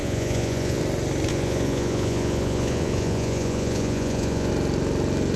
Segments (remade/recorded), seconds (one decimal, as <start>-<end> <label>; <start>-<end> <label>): 0.0-0.8 remade; 0.8-1.3 recorded; 1.3-4.5 remade; 4.5-5.4 recorded